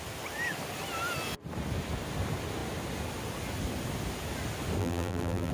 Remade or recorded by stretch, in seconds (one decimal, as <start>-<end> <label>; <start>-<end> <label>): 0.0-4.8 recorded; 4.8-5.5 remade